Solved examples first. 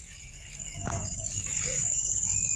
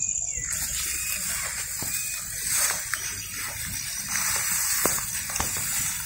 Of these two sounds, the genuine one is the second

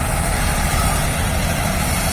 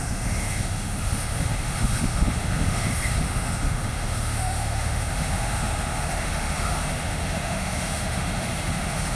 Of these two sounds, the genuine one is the first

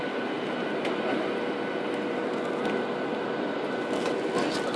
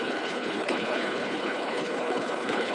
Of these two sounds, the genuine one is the first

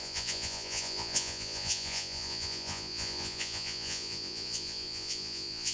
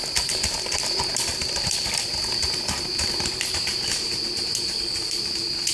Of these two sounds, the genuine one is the second